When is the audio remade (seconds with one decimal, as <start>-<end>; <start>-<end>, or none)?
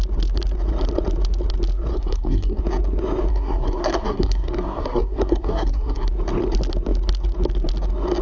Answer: 1.9-2.6; 3.3-6.1